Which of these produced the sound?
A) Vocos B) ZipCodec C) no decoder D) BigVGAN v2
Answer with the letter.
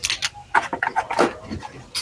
C